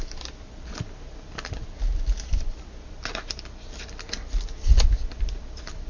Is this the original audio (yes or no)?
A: yes